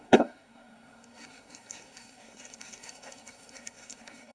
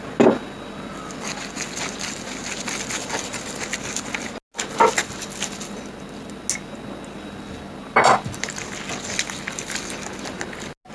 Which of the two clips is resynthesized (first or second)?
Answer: first